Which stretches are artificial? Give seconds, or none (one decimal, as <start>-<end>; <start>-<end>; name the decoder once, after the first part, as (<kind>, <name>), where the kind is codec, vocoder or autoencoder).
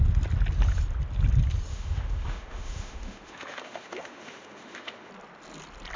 1.7-5.1 (autoencoder, DAC-VAE)